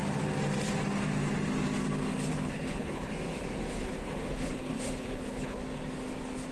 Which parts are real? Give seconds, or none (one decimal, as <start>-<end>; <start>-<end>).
0.0-2.3; 3.1-3.7; 5.6-6.5